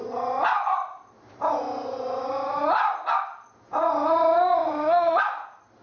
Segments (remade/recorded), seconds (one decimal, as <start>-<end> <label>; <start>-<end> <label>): 0.0-4.6 recorded; 4.6-5.2 remade; 5.2-5.8 recorded